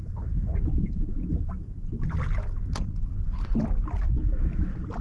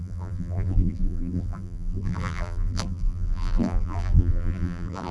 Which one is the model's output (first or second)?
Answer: second